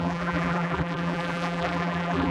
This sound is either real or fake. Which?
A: fake